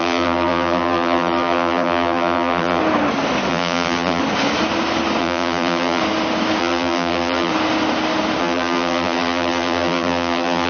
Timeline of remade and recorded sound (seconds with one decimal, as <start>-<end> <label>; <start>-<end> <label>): 0.0-2.8 remade; 2.8-3.5 recorded; 3.5-4.2 remade; 4.2-5.2 recorded; 5.2-6.0 remade; 6.0-6.6 recorded; 6.6-7.5 remade; 7.5-8.4 recorded; 8.4-10.7 remade